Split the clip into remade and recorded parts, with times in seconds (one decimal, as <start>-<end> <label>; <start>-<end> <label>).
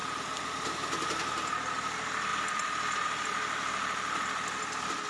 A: 0.0-1.5 remade; 1.5-2.3 recorded; 2.3-5.1 remade